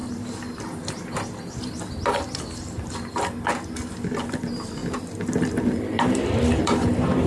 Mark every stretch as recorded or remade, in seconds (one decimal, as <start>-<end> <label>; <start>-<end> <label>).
0.0-7.3 recorded